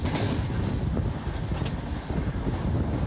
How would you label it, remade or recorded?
recorded